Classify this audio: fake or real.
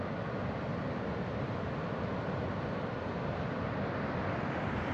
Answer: real